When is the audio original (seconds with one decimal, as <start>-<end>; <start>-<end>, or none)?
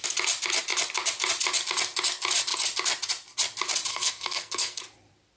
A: 0.0-3.9; 4.8-5.4